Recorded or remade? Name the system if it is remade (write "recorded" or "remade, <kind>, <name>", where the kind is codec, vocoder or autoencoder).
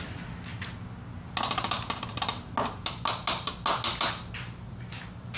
recorded